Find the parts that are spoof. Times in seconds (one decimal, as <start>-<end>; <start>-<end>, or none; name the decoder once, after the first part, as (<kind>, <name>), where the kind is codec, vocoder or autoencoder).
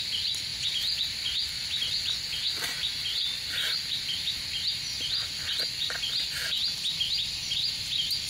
none